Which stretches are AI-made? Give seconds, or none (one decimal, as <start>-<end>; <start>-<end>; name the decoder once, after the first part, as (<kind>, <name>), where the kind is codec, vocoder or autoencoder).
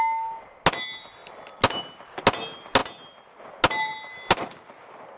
none